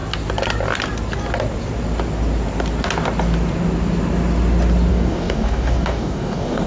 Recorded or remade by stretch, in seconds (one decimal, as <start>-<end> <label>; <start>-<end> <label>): 0.0-4.9 recorded; 4.9-6.7 remade